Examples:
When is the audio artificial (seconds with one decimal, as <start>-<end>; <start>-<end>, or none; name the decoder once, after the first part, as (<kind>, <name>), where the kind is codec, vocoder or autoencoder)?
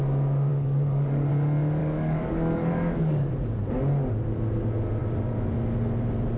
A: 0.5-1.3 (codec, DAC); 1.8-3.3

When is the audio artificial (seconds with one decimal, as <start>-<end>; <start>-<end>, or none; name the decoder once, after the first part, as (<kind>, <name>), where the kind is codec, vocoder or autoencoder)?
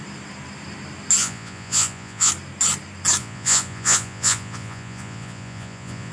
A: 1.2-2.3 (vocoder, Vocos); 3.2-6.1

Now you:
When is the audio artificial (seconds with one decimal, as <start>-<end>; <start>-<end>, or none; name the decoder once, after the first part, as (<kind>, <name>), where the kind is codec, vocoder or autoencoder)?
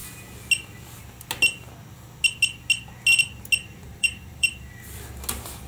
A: 3.8-4.7 (vocoder, BigVGAN v2)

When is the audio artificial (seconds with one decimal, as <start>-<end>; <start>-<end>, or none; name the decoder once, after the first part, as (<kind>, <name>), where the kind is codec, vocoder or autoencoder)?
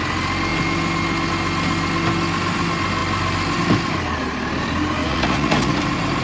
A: 5.0-5.8 (vocoder, Vocos)